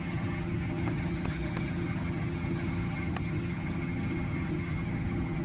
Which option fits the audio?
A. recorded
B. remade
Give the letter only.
B